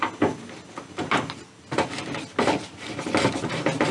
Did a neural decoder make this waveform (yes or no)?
no